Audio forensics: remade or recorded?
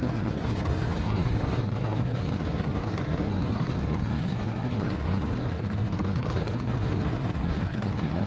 remade